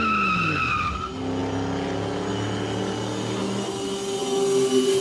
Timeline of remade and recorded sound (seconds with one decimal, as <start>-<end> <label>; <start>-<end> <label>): 0.0-5.0 recorded